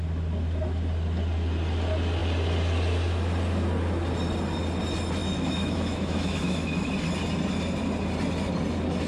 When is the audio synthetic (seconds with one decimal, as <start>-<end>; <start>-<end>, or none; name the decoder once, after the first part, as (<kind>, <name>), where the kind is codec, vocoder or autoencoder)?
5.2-6.9 (autoencoder, DAC-VAE)